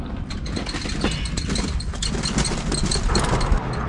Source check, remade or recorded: recorded